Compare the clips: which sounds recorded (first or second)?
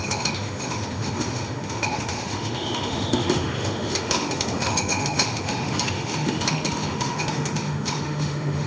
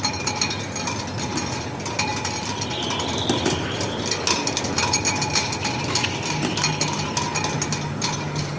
second